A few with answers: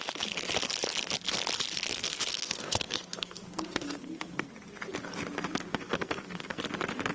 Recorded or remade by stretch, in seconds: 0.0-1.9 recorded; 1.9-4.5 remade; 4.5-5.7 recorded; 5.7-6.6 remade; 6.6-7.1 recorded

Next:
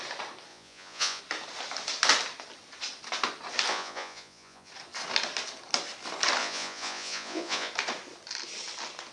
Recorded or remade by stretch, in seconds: 0.0-0.5 recorded; 0.5-1.2 remade; 1.2-3.7 recorded; 3.7-4.7 remade; 4.7-6.4 recorded; 6.4-7.7 remade; 7.7-9.1 recorded

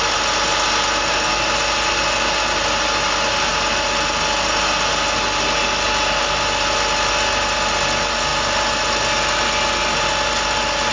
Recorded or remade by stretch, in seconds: 0.0-10.9 recorded

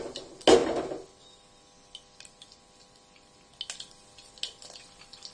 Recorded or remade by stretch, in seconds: 0.0-5.3 recorded